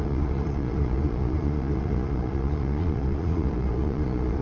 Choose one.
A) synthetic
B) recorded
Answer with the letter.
A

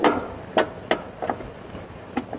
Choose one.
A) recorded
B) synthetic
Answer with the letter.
A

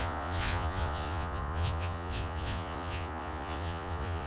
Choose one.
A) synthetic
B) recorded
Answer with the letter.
A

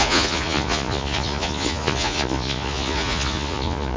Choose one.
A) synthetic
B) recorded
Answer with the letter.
A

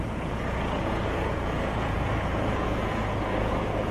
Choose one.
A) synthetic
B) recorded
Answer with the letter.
A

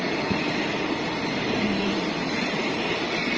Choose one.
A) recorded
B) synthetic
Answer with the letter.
A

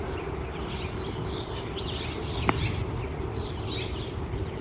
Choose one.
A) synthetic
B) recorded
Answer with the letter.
B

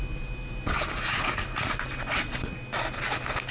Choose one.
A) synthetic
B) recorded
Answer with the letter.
B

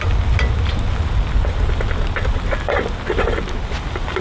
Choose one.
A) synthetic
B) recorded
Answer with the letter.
B